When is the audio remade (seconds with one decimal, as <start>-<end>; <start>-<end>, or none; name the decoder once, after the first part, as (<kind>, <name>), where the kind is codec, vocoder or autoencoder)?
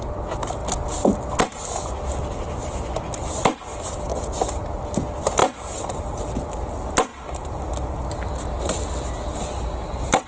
none